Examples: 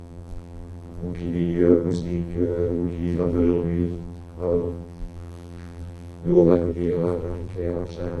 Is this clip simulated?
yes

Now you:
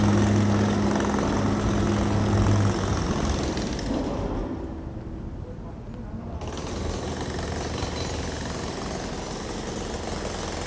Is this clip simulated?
no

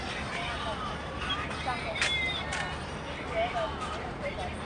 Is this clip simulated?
no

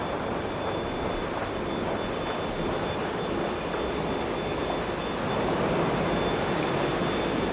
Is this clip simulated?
no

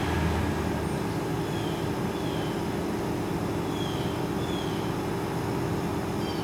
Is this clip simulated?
no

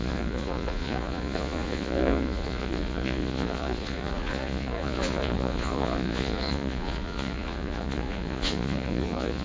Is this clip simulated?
yes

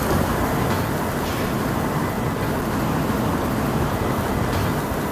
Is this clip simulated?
no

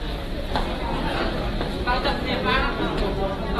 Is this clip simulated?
no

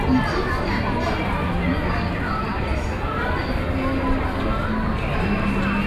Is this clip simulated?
no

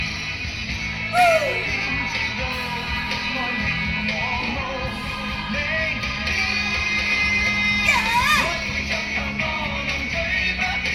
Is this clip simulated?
no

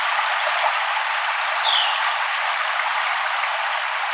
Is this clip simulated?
no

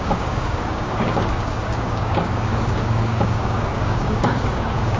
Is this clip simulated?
yes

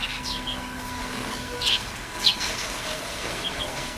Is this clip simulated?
yes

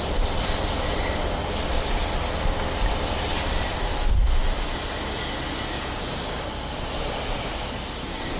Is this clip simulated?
no